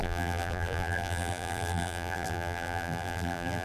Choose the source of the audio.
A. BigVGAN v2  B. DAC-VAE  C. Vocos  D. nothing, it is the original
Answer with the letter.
A